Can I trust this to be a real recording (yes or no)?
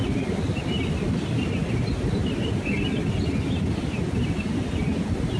yes